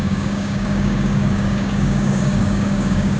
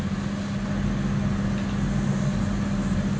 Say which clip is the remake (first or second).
first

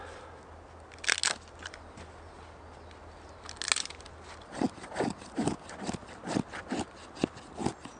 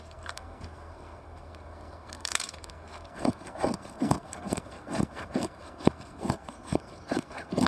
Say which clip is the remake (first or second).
second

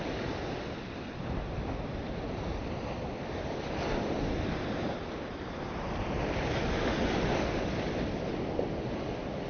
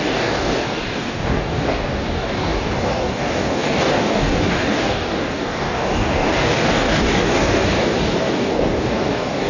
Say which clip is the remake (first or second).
second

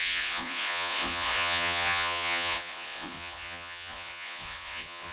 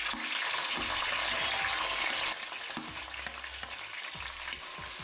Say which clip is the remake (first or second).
first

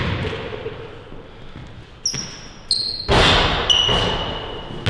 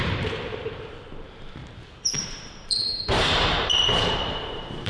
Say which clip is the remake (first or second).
second